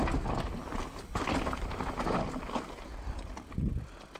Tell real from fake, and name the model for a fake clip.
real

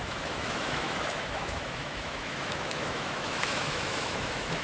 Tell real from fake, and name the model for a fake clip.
fake, autoencoder, DAC-VAE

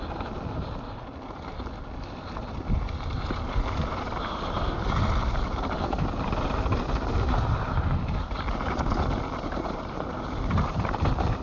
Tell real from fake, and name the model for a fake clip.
real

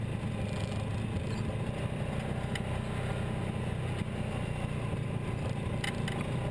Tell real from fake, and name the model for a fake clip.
real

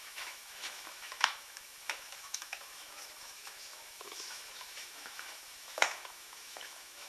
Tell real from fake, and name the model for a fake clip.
fake, autoencoder, DAC-VAE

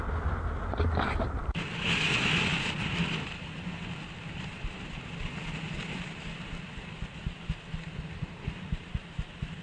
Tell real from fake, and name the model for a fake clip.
real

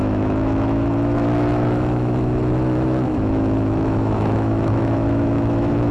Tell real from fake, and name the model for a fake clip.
fake, autoencoder, DAC-VAE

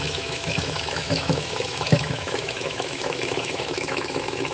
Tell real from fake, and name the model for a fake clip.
fake, autoencoder, DAC-VAE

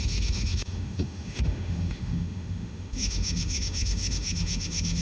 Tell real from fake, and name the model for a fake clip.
fake, autoencoder, DAC-VAE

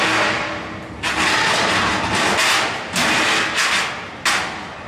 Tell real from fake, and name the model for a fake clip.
real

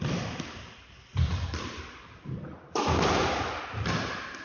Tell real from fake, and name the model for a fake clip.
real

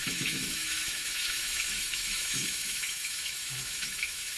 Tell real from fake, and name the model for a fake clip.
fake, autoencoder, DAC-VAE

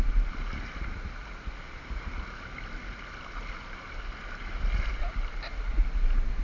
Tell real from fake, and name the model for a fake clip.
real